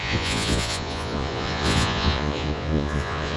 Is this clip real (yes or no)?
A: no